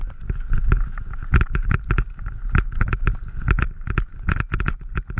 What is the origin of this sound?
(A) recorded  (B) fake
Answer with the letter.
A